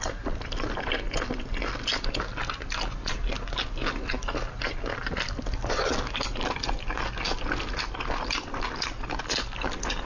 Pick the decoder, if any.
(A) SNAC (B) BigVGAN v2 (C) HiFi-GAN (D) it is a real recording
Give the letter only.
D